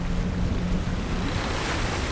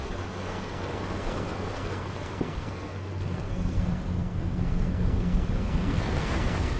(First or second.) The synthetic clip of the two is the second